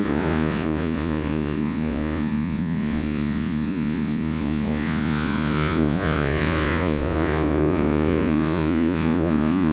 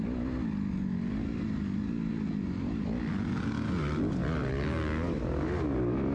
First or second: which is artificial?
first